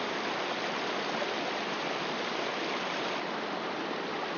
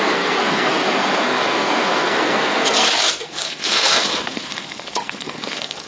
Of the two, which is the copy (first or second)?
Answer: second